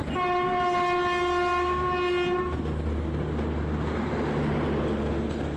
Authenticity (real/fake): real